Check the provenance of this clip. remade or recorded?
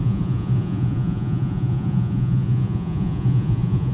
remade